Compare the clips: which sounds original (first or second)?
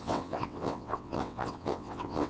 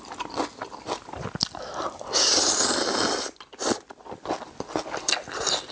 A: second